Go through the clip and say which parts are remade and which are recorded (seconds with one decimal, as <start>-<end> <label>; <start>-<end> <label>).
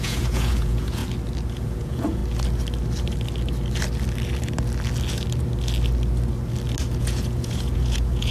0.0-1.0 remade; 1.0-1.5 recorded; 1.5-2.2 remade; 2.2-7.0 recorded; 7.0-8.3 remade